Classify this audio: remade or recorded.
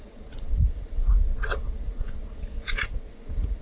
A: remade